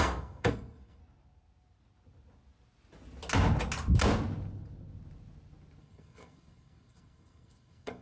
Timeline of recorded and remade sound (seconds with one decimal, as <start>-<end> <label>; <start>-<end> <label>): 0.0-1.0 remade; 1.0-5.8 recorded; 5.8-8.0 remade